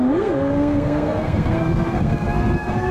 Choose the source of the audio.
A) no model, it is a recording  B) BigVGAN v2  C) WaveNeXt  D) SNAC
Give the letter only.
D